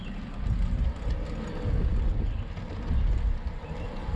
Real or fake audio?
real